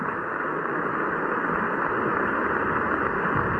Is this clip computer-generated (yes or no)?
no